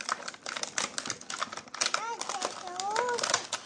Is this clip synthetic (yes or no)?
no